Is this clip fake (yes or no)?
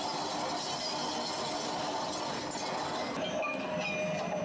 no